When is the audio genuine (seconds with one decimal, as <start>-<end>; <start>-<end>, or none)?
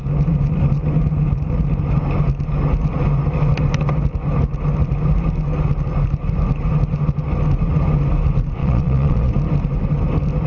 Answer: 0.0-8.6; 9.3-10.5